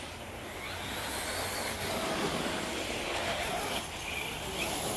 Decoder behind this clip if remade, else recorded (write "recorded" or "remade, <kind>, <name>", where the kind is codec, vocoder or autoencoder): recorded